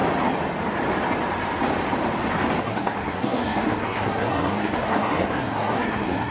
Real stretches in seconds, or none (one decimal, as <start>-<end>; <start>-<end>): 0.0-2.6